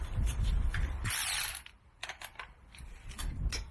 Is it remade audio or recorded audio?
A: recorded